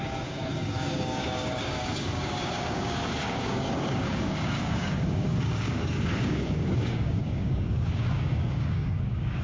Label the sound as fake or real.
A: fake